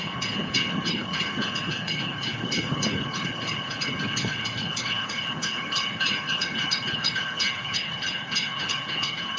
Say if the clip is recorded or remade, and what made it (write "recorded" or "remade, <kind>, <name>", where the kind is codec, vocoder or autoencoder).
remade, codec, HILCodec